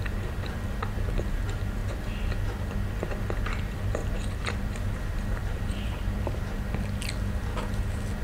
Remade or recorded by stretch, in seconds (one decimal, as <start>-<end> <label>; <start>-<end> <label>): 0.0-4.0 recorded; 4.0-5.0 remade; 5.0-5.4 recorded; 5.4-6.6 remade; 6.6-8.2 recorded